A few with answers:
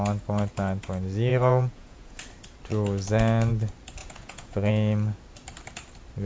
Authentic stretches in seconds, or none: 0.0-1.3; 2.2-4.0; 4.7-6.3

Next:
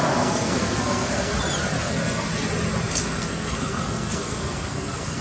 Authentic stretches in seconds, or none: 1.3-1.8; 2.3-2.9

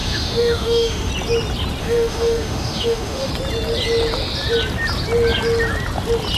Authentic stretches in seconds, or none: 1.1-1.8; 3.3-6.4

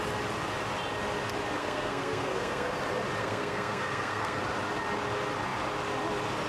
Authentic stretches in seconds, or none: 0.0-1.6; 2.8-3.2; 4.4-6.5

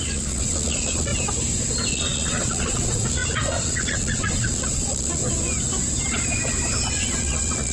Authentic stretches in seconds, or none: 1.1-1.9; 5.2-6.9

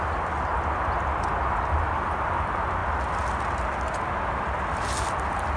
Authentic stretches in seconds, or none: 0.0-5.6

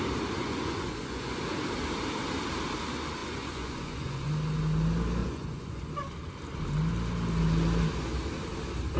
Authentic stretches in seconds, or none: 0.0-0.4; 1.4-3.2; 4.3-5.2; 5.9-9.0